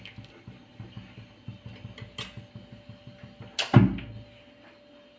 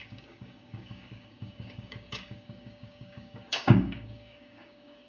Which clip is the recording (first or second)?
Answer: first